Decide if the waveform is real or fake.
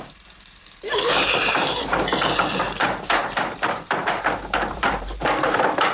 fake